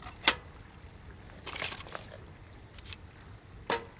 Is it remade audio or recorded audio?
recorded